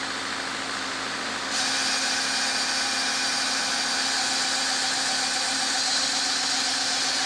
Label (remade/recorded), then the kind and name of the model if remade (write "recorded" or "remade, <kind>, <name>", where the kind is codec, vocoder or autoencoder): recorded